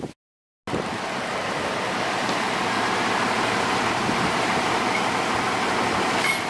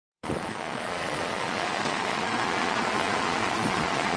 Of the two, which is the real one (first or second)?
first